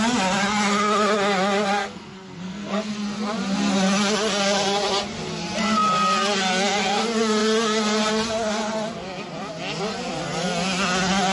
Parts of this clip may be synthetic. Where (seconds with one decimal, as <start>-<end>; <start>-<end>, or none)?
1.8-2.9